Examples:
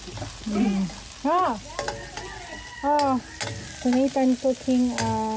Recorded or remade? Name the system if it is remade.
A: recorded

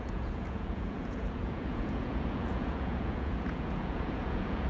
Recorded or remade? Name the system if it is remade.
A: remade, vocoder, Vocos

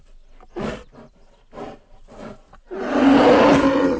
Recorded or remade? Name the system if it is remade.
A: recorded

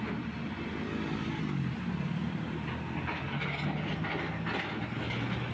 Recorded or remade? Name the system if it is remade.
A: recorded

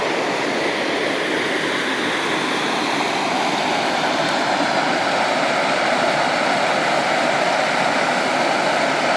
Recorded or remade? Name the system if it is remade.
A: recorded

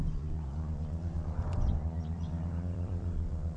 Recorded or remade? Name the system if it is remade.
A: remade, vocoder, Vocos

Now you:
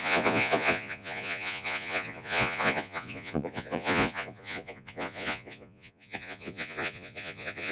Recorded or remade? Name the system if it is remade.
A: remade, vocoder, Vocos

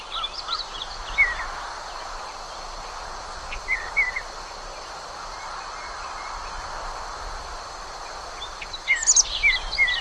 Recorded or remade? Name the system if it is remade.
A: recorded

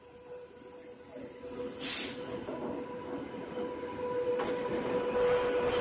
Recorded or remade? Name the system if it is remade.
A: recorded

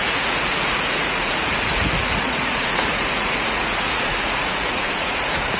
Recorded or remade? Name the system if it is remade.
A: remade, vocoder, Vocos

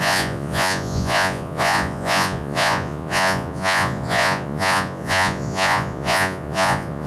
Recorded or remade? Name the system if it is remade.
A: remade, vocoder, Vocos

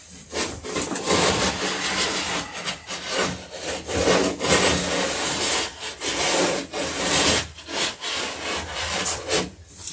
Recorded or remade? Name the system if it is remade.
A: recorded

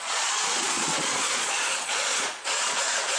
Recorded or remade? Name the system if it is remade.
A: remade, vocoder, Vocos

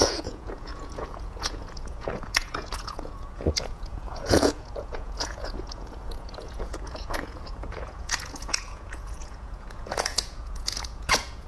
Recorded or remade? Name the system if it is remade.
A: remade, vocoder, Vocos